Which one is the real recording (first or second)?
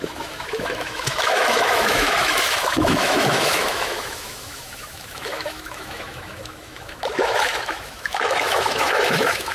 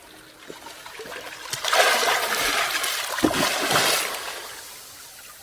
second